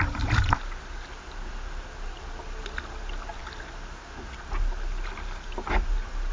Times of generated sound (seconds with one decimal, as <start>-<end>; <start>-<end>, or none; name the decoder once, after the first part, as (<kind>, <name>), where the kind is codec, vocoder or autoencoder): none